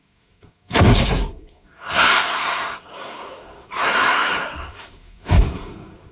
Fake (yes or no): yes